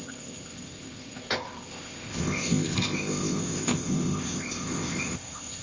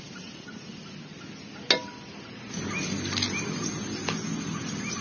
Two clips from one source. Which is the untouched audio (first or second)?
second